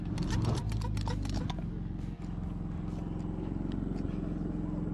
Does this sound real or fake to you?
real